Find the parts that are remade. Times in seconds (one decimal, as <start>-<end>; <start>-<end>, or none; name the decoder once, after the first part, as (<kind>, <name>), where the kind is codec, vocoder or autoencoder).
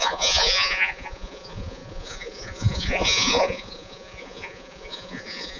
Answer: 0.0-5.6 (vocoder, Vocos)